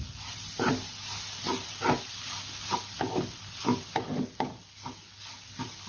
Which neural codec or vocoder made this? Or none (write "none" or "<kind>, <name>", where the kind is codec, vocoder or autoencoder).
none